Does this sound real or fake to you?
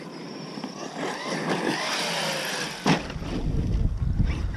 real